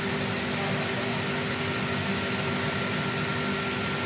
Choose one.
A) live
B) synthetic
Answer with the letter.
A